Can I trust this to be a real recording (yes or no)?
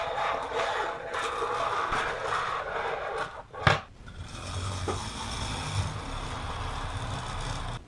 yes